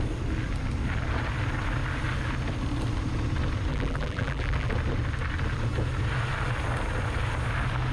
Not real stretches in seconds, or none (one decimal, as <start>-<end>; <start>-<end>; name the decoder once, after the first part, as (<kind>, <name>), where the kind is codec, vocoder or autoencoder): 3.7-4.7 (vocoder, BigVGAN v2)